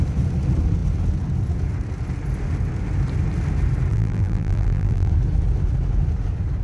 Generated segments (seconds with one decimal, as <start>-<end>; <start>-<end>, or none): 3.9-5.1